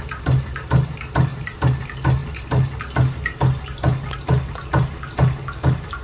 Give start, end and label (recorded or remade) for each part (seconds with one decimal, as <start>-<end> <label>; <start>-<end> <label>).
0.0-6.0 recorded